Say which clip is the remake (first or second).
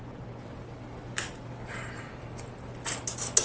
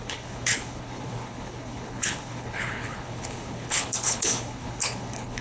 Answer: second